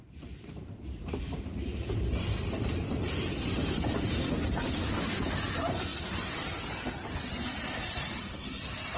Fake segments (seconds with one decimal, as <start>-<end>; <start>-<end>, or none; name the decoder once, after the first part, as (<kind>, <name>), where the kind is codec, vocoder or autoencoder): 0.0-5.9 (vocoder, BigVGAN v2); 7.7-9.0